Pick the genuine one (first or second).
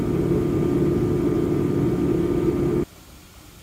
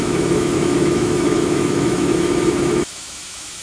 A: first